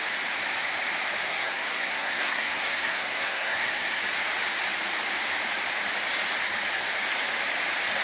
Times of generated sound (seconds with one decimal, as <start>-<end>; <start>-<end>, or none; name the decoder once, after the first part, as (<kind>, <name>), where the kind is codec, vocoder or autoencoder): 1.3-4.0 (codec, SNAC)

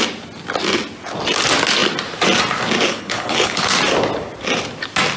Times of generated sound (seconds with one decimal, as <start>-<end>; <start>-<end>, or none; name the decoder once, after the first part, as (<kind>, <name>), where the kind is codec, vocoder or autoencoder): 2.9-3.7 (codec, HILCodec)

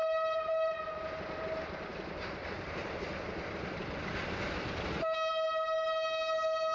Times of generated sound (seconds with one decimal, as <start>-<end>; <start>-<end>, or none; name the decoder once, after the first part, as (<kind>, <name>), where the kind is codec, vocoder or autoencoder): none

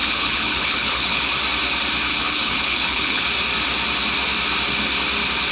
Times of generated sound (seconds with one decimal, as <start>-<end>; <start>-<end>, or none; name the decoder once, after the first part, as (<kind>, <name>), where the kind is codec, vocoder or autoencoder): 0.0-1.2 (codec, HILCodec); 2.1-3.2

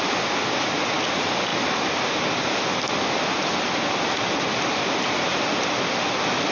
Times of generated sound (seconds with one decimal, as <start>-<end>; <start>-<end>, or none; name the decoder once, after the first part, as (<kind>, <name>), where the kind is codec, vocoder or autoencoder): none

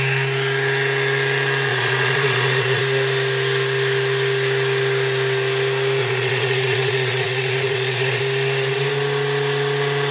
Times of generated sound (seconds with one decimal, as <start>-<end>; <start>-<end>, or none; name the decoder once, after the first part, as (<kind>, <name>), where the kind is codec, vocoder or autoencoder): 1.7-2.8 (vocoder, Vocos); 6.0-8.2

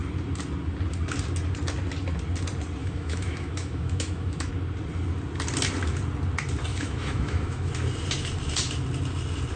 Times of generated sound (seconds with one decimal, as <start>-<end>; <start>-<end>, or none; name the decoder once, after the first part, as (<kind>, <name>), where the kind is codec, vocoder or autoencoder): 2.8-4.5 (autoencoder, DAC-VAE); 6.7-7.7